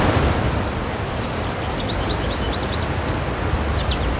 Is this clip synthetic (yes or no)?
yes